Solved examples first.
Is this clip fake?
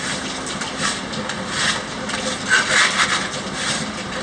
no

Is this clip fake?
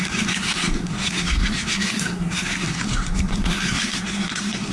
yes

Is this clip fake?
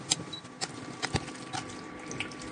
no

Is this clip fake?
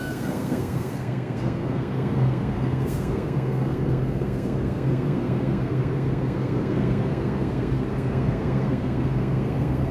yes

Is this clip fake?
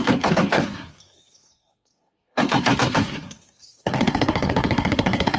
yes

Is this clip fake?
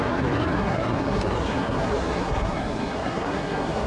yes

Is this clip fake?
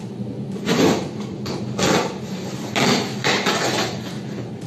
no